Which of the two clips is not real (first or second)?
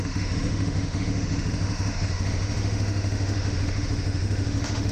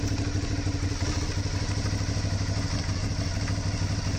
first